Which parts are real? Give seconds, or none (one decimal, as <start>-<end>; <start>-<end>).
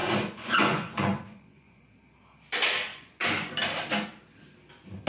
1.9-2.9; 3.5-5.1